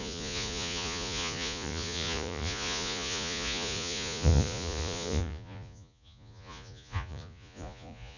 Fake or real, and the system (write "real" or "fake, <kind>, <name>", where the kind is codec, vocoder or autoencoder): fake, vocoder, Vocos